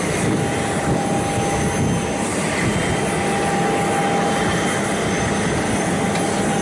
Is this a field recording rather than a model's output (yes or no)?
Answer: yes